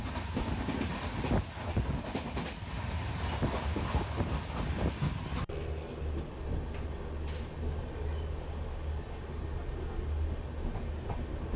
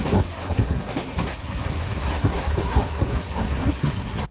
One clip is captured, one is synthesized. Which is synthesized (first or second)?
second